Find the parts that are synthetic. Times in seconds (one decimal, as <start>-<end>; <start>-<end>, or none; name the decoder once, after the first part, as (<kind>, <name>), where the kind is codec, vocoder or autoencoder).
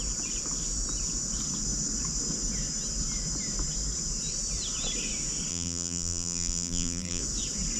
5.5-7.2 (vocoder, BigVGAN v2)